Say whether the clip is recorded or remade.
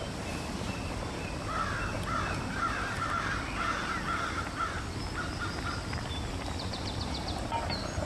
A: recorded